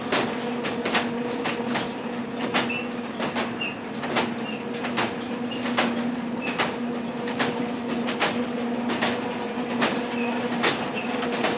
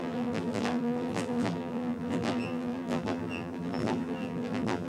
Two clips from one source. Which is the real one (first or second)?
first